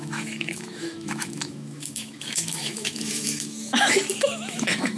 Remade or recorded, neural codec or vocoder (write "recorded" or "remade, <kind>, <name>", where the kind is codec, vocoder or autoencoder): remade, autoencoder, DAC-VAE